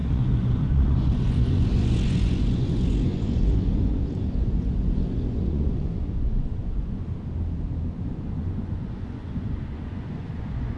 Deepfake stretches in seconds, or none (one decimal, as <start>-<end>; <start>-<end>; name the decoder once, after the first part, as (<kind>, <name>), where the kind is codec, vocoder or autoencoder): 0.0-7.0 (vocoder, Vocos); 8.0-10.8